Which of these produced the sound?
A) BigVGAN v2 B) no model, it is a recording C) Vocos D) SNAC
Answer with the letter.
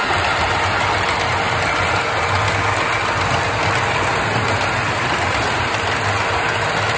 B